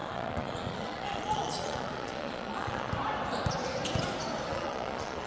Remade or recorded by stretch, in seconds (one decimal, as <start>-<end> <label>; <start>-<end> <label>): 0.0-2.9 remade; 2.9-4.5 recorded; 4.5-5.3 remade